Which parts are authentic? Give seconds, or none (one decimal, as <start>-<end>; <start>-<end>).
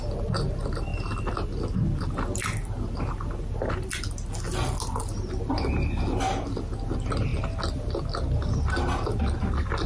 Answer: 0.0-9.9